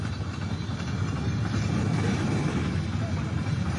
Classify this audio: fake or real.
real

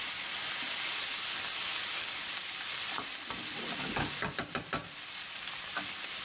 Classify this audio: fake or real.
real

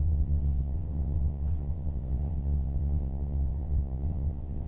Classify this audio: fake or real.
fake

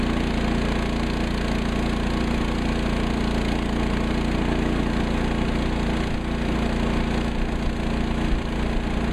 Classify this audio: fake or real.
real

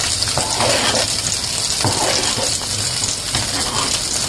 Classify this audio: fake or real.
real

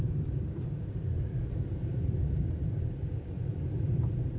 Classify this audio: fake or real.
fake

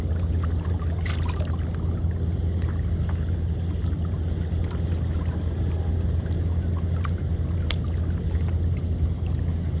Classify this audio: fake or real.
real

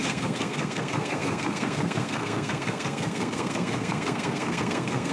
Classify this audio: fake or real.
fake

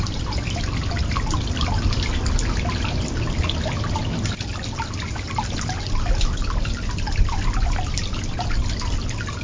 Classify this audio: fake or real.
real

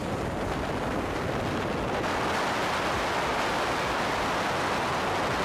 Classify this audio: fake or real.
real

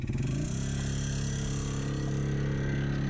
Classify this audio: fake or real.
real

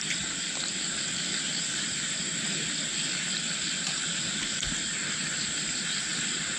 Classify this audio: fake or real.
real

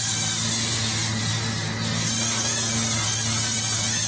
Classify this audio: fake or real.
real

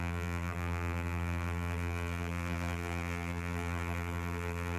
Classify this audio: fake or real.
fake